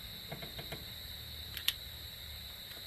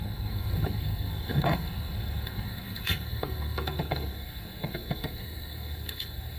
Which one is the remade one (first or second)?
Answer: second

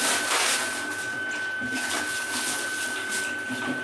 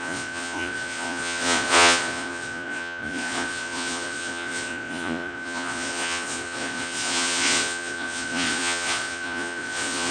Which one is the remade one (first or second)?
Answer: second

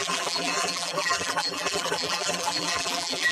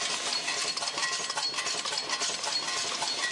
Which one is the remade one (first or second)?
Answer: first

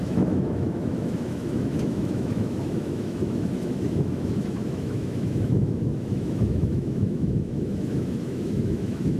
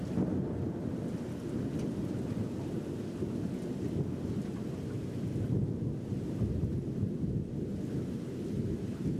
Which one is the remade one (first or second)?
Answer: first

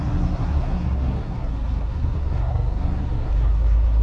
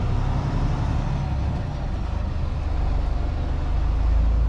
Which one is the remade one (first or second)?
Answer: first